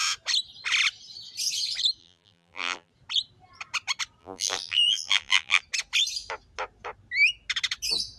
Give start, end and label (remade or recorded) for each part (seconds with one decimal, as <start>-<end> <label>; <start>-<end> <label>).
0.0-2.0 recorded; 2.0-2.9 remade; 2.9-4.2 recorded; 4.2-5.6 remade; 5.6-8.2 recorded